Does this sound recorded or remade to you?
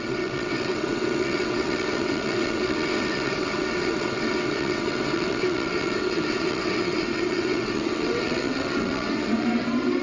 remade